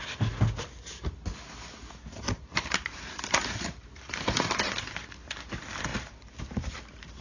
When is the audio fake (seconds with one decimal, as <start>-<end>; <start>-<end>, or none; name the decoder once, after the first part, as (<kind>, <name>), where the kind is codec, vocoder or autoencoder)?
2.5-5.0 (vocoder, BigVGAN v2); 5.9-6.8